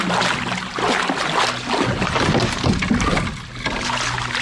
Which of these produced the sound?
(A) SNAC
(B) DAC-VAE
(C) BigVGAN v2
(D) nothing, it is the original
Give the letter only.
D